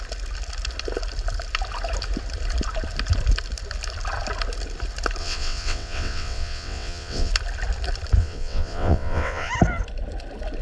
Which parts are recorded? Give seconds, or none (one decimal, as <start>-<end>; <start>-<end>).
0.0-5.2; 7.3-8.2; 9.5-10.6